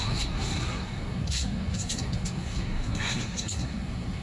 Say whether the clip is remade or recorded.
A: remade